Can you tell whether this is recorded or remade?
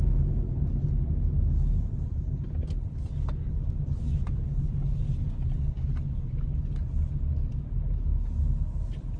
recorded